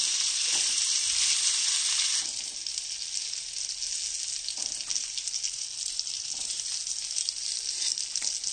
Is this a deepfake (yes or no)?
no